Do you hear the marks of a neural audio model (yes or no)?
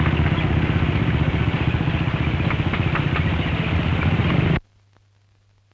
no